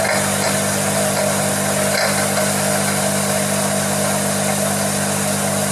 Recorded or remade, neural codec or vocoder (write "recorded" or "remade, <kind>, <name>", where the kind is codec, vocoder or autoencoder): recorded